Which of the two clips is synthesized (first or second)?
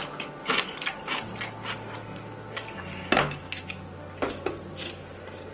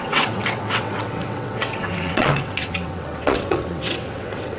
second